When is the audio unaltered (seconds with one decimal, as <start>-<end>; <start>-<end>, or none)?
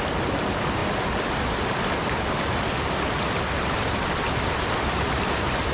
0.0-5.7